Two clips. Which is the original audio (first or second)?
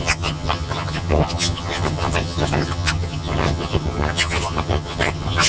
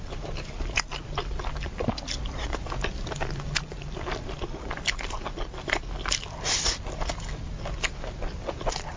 second